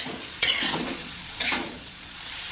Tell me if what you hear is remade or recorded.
remade